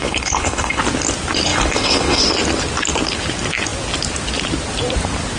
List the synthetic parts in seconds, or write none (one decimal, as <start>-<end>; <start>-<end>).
0.0-0.8; 1.5-2.2